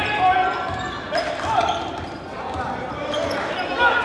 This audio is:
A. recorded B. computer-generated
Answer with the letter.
A